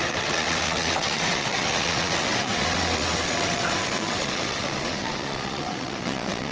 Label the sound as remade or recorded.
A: remade